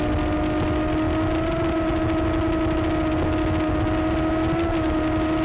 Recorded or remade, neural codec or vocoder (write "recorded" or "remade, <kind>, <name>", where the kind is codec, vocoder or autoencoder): recorded